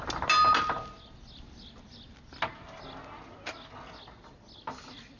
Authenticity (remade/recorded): recorded